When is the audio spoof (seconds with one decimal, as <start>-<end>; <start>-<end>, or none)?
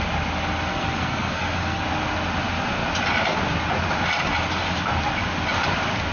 0.7-1.8